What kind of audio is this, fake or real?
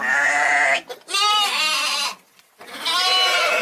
real